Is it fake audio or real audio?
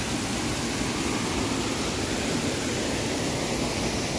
real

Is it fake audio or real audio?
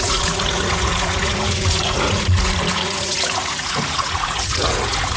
fake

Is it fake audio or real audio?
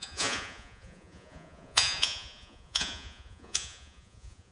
fake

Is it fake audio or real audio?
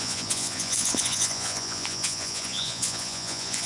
fake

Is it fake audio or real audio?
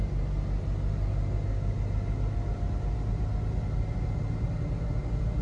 real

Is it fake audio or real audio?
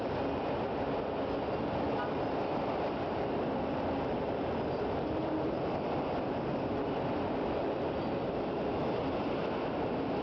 real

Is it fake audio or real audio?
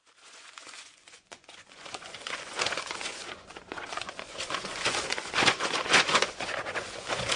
fake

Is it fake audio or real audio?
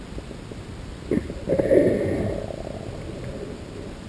real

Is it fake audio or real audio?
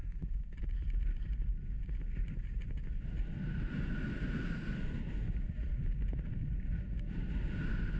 real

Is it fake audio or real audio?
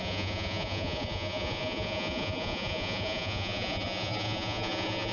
fake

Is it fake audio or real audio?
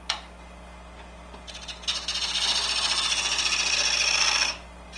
real